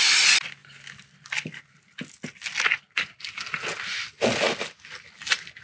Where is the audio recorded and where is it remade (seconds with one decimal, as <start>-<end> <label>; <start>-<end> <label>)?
0.0-5.6 recorded